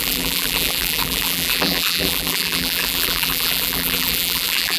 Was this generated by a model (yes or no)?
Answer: yes